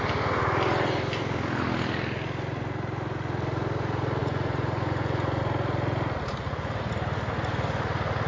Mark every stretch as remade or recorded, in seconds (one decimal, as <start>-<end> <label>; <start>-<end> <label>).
0.0-4.2 recorded; 4.2-5.4 remade; 5.4-8.3 recorded